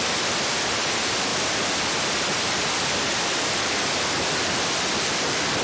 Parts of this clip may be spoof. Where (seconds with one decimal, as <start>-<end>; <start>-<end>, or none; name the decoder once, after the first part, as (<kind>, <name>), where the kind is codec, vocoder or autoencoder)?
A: 0.0-5.6 (vocoder, BigVGAN v2)